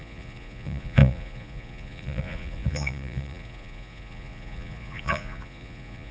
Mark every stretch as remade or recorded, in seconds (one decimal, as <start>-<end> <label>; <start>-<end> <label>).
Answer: 0.0-6.1 remade